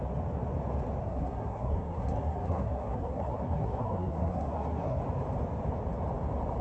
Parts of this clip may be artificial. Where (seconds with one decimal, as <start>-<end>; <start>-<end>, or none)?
1.0-5.0

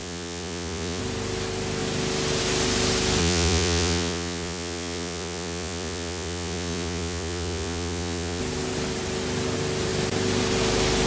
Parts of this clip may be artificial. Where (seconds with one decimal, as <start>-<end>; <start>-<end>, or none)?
0.0-1.0; 3.2-8.4